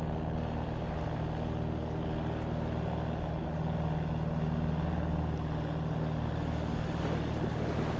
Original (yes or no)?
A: yes